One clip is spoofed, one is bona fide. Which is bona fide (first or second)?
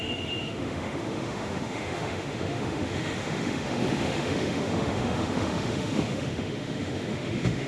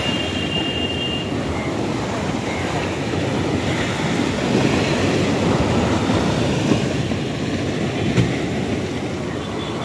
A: second